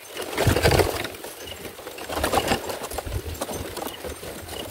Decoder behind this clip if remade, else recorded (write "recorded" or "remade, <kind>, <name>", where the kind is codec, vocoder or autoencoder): recorded